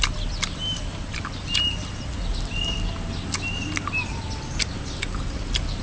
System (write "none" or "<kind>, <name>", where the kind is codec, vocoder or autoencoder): none